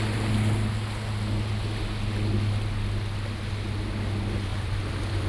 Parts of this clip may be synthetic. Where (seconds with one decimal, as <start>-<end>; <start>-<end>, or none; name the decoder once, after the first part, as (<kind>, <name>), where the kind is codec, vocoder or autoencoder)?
4.5-5.3 (vocoder, BigVGAN v2)